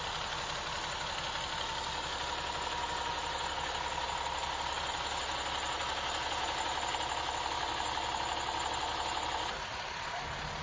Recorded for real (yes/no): yes